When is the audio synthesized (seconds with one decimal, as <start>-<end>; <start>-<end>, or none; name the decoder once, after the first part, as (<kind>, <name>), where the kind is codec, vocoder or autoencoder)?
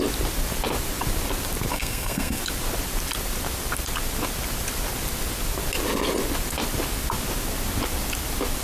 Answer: 1.7-2.4 (codec, SNAC)